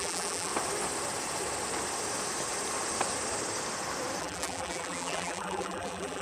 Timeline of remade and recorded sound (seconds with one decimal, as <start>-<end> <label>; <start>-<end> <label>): 0.0-0.5 remade; 0.5-4.2 recorded; 4.2-6.2 remade